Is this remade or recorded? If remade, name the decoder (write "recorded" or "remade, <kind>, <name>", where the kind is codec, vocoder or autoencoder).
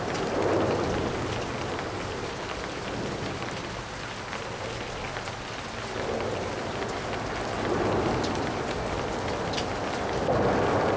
recorded